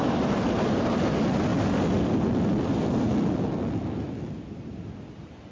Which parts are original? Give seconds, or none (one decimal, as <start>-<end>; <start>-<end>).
0.0-5.5